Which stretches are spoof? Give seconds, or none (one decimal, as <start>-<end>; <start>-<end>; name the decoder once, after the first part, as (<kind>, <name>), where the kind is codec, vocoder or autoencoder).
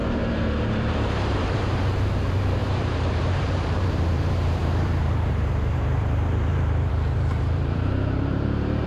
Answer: 0.0-8.9 (vocoder, BigVGAN v2)